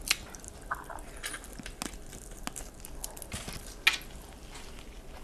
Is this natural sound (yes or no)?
yes